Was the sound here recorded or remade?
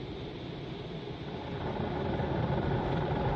recorded